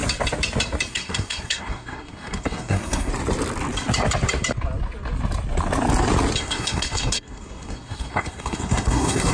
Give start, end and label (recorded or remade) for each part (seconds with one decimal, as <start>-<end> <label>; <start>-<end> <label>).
0.0-0.9 recorded; 0.9-3.1 remade; 3.1-6.4 recorded; 6.4-9.3 remade